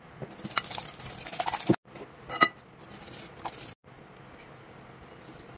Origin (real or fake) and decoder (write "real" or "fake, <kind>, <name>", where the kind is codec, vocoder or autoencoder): real